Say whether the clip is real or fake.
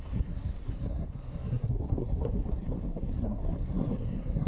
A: fake